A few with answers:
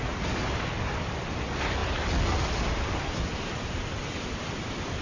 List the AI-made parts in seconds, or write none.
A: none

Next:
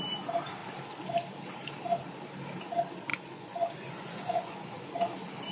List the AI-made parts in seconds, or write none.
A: 3.1-4.8 (vocoder, Vocos)

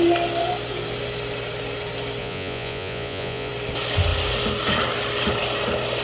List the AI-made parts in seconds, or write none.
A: 2.2-3.5 (vocoder, Vocos)

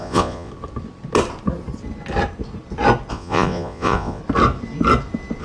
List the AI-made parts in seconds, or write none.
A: 0.0-0.5 (vocoder, Vocos); 3.1-4.2

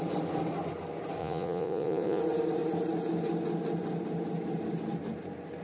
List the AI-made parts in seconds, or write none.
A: 1.2-2.2 (vocoder, Vocos)